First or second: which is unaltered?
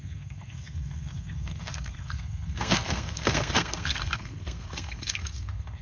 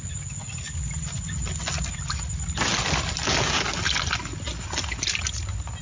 second